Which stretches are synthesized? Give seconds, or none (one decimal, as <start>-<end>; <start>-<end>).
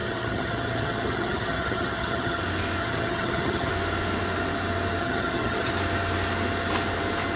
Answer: 0.0-2.4; 2.8-3.7; 5.0-5.7